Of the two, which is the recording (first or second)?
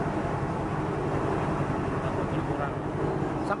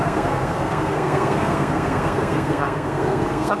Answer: first